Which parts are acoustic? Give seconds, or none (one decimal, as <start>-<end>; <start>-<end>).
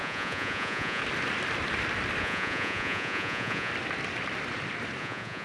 1.0-2.2; 3.7-5.0